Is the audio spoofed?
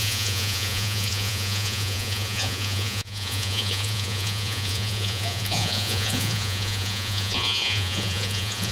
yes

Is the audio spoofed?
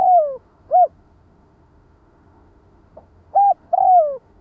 yes